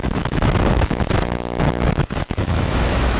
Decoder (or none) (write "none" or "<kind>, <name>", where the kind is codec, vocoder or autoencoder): autoencoder, DAC-VAE